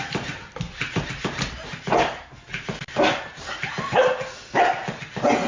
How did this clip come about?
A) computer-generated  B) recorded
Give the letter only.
B